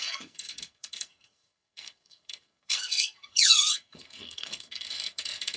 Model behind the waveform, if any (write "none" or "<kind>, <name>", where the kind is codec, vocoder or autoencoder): codec, SNAC